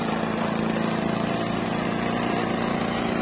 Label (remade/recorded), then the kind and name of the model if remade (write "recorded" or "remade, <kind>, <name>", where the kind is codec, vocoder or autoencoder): remade, vocoder, BigVGAN v2